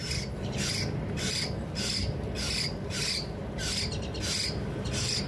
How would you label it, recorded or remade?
recorded